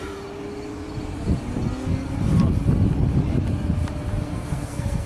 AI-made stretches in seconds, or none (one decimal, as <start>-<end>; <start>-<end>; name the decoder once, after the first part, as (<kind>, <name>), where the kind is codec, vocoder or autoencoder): 4.1-5.1 (codec, SNAC)